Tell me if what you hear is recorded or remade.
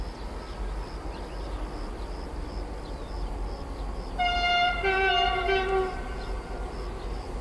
recorded